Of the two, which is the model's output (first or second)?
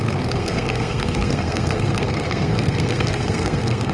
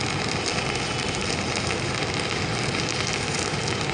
first